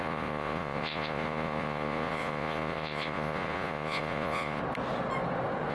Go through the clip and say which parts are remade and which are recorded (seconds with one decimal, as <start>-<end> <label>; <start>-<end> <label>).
0.0-4.6 remade; 4.6-5.7 recorded